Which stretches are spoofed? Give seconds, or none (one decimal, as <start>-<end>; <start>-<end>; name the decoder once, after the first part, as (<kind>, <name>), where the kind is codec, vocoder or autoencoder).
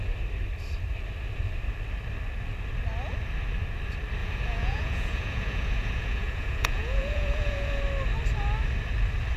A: 4.2-7.8 (vocoder, Vocos)